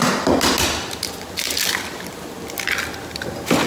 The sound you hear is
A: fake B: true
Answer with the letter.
B